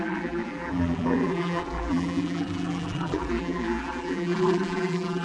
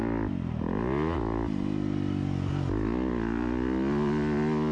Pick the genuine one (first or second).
second